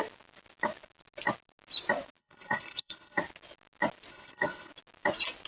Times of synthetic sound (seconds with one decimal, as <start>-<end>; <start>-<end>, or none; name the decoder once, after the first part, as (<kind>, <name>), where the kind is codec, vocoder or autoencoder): 2.2-3.2 (codec, HILCodec); 4.1-4.7